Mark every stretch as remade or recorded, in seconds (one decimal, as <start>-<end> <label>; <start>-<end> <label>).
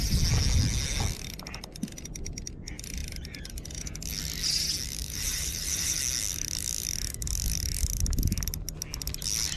0.0-5.0 recorded; 5.0-6.0 remade; 6.0-9.6 recorded